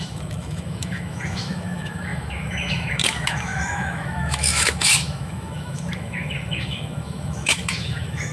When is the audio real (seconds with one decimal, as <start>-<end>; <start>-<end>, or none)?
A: none

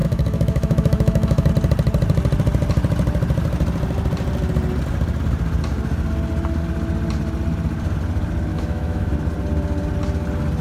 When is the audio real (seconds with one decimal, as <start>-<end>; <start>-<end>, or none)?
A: 1.5-8.5; 9.1-10.6

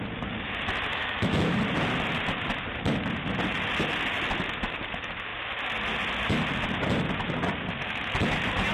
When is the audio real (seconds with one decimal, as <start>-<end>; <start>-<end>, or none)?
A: 0.0-0.9; 1.6-8.7

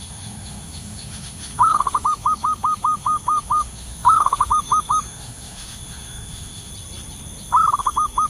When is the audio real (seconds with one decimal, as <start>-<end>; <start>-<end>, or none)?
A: 6.7-7.8

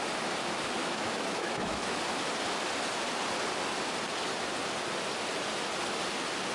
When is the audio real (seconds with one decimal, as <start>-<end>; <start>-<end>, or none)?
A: 0.0-0.8; 2.0-6.5

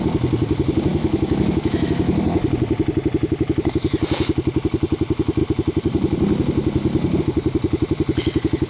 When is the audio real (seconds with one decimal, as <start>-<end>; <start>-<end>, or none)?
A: 0.0-0.9; 1.9-8.7